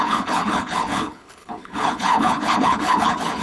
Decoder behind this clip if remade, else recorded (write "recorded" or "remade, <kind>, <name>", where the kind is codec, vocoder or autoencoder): remade, codec, HILCodec